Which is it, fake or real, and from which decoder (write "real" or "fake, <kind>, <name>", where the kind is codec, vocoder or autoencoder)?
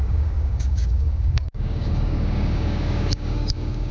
fake, codec, DAC